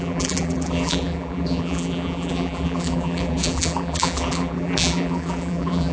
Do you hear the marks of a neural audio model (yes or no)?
yes